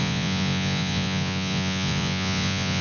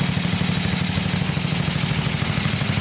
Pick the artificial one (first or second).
first